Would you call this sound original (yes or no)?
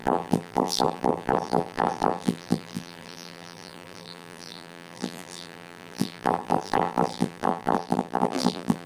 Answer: no